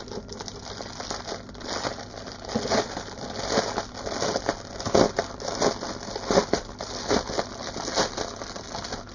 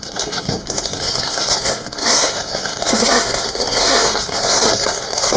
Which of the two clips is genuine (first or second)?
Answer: first